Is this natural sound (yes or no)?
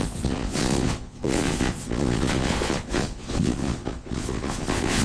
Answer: no